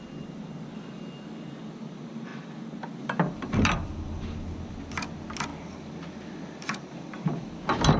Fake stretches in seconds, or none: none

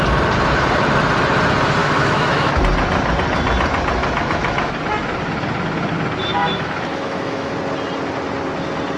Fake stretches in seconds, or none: 1.8-2.6; 4.0-4.7; 6.4-7.5

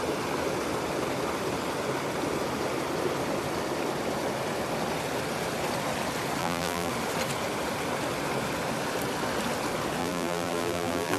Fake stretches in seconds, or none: 6.4-6.9; 10.0-11.2

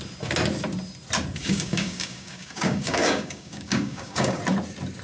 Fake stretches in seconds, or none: 1.4-4.4